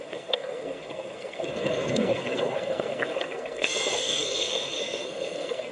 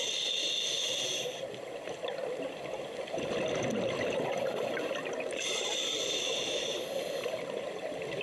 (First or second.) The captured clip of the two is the second